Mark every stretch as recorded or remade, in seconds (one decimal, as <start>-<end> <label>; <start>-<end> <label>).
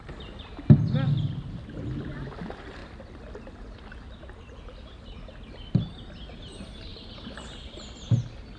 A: 0.0-8.6 recorded